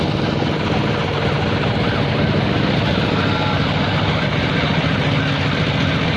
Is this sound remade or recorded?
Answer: recorded